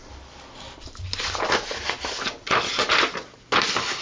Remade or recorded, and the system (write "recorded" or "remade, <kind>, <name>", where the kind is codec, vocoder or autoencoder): recorded